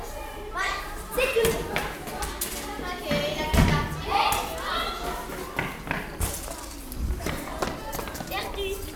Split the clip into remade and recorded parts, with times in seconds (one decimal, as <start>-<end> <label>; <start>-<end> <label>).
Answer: 0.0-9.0 recorded